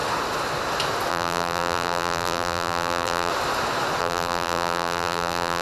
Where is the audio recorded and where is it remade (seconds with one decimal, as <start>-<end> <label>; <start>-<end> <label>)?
0.0-1.1 recorded; 1.1-3.3 remade; 3.3-4.0 recorded; 4.0-5.6 remade

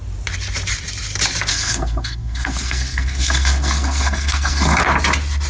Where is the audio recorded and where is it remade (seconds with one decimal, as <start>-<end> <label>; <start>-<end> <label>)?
0.0-1.5 recorded; 1.5-4.8 remade; 4.8-5.5 recorded

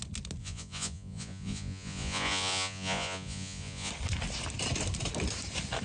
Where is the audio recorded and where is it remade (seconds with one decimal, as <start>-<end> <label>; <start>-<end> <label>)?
0.0-0.4 recorded; 0.4-3.9 remade; 3.9-5.8 recorded